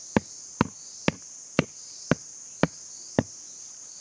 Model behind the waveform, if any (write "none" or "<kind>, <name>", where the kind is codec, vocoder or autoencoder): none